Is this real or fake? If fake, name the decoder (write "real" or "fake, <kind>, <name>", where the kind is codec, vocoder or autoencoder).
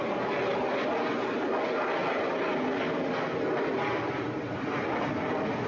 real